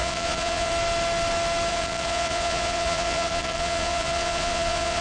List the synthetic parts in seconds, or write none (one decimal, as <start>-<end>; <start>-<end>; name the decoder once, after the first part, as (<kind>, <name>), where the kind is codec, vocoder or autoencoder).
0.0-0.7 (vocoder, Vocos); 1.7-5.0